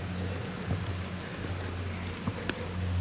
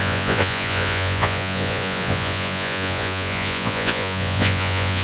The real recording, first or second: first